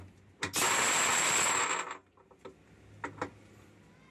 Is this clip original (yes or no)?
yes